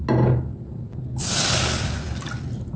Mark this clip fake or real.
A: real